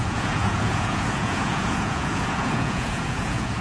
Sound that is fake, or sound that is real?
fake